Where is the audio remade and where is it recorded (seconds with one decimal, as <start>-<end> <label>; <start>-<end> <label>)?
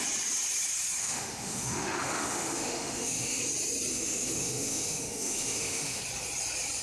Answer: 0.0-1.0 recorded; 1.0-3.4 remade; 3.4-3.9 recorded; 3.9-6.0 remade; 6.0-6.8 recorded